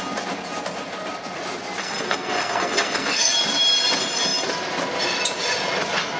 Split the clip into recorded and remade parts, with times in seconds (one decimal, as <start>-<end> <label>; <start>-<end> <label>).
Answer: 0.0-1.8 recorded; 1.8-3.3 remade; 3.3-6.2 recorded